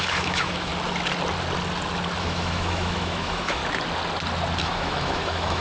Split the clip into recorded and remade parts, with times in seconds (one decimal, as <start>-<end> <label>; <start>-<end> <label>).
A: 0.0-0.7 remade; 0.7-2.2 recorded; 2.2-3.6 remade; 3.6-4.6 recorded; 4.6-5.6 remade